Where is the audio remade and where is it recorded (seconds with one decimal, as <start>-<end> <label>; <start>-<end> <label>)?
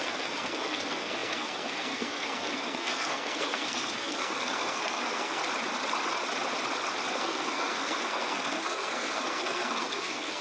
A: 0.0-5.4 remade; 5.4-7.1 recorded; 7.1-10.4 remade